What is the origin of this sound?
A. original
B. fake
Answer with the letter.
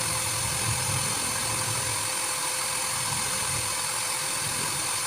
A